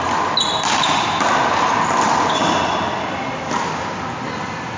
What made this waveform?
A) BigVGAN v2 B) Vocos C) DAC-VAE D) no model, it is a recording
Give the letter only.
D